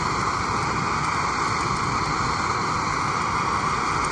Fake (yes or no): no